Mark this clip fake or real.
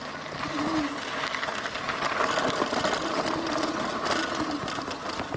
real